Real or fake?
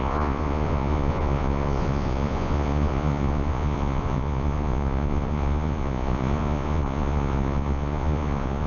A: fake